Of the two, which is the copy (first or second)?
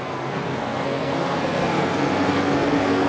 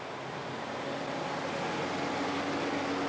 first